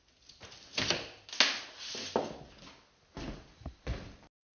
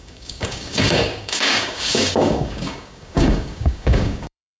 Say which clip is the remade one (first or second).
second